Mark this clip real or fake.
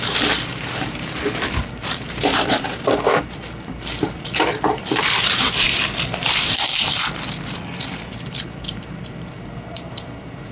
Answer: fake